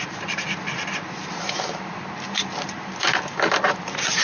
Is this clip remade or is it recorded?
remade